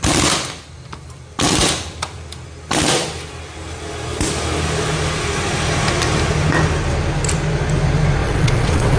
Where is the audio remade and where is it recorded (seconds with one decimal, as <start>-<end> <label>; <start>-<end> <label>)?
0.0-8.2 recorded; 8.2-9.0 remade